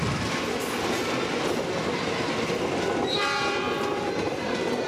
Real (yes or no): yes